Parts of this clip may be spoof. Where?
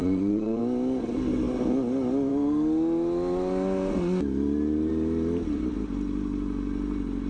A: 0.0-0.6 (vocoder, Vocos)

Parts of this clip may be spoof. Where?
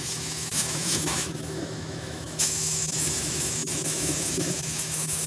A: 0.0-5.3 (autoencoder, DAC-VAE)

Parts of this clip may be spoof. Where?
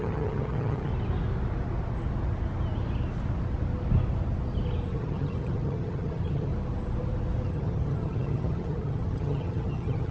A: 0.0-0.9 (vocoder, HiFi-GAN); 4.9-6.5; 7.5-10.1